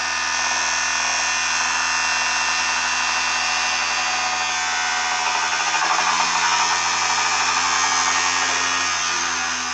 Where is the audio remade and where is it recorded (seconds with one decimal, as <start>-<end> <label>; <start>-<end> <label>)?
0.0-9.7 recorded